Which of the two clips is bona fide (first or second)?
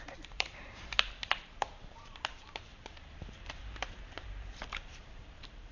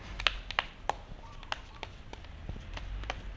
second